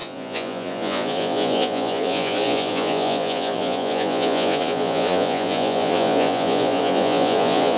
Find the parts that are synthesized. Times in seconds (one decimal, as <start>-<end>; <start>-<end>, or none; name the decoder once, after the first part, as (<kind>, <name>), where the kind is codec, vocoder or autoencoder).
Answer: 0.0-7.8 (vocoder, Vocos)